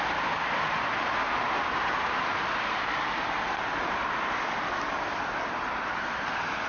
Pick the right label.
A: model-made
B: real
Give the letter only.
B